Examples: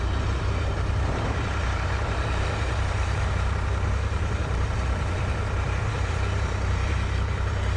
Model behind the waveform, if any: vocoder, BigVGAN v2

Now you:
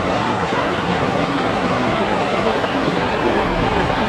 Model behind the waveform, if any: codec, SNAC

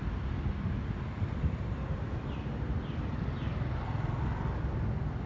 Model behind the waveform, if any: none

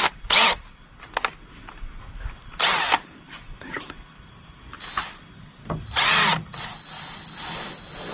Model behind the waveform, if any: none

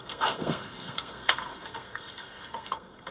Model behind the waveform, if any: codec, SNAC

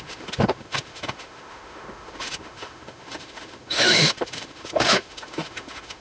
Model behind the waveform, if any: autoencoder, DAC-VAE